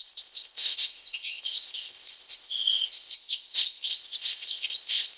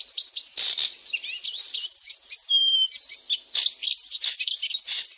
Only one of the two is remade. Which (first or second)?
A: first